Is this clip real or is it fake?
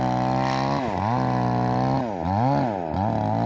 real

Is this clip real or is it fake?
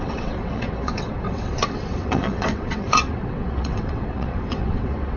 fake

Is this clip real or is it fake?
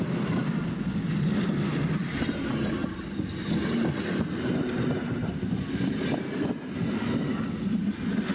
real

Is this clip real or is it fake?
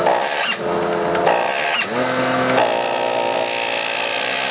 real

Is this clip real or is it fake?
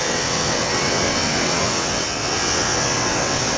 fake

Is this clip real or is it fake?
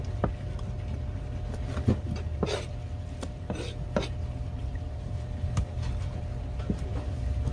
real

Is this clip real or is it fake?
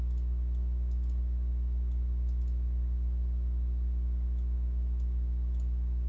real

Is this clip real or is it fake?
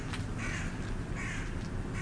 real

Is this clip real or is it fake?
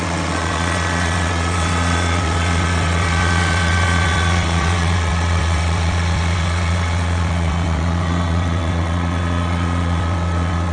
fake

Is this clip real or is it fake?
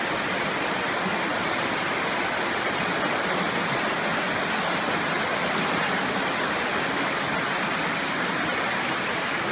real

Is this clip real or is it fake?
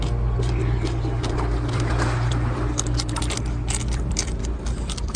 real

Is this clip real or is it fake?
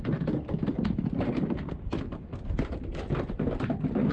real